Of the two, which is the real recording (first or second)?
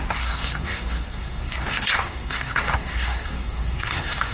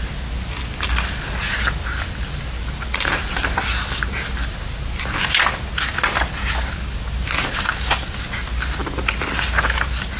second